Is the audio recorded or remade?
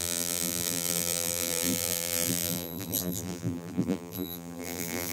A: remade